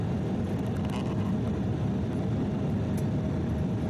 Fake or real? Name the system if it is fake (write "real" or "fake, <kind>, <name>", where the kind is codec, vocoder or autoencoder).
real